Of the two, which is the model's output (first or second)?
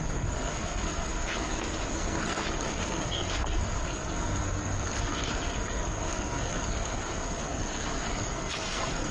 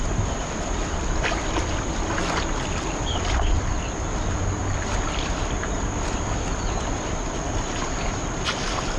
first